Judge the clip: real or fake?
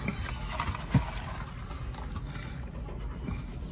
real